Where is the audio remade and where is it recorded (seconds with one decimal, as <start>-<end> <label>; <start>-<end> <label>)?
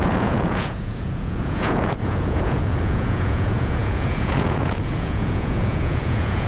0.0-6.5 remade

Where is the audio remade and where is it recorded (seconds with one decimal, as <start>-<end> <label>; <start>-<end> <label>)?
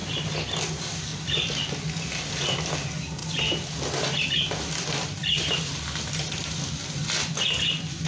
0.0-8.1 recorded